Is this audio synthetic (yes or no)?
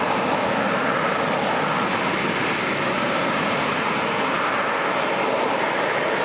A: no